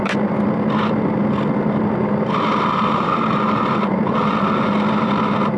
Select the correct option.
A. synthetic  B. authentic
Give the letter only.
B